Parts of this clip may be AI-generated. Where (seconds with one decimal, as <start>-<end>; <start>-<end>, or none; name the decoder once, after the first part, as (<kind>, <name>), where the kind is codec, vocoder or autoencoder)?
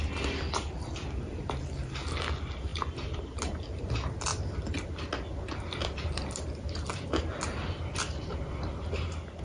none